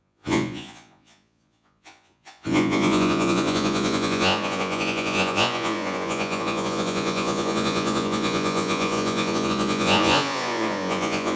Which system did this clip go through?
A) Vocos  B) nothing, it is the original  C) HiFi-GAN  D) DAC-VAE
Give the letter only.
A